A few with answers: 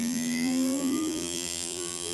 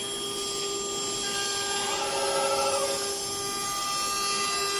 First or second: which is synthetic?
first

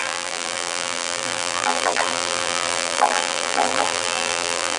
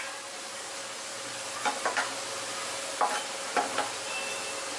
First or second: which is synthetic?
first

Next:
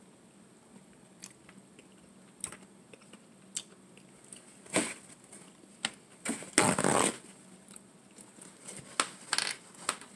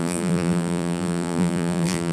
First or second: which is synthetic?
second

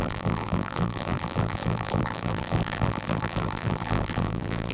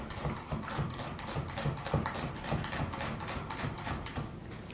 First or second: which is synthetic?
first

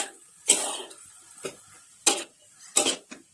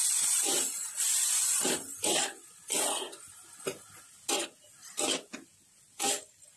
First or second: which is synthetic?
first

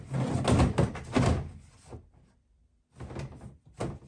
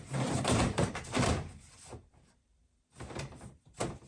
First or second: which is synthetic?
second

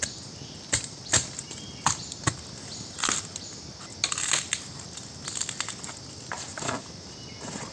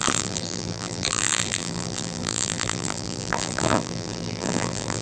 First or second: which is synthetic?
second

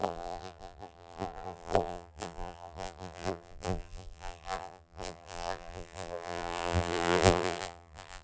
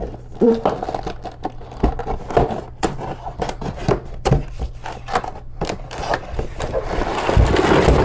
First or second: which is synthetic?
first